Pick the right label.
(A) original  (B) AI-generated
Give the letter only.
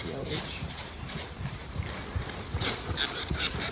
B